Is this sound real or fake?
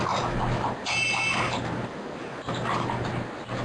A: real